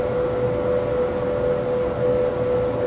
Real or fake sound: real